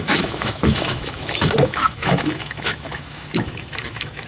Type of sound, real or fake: fake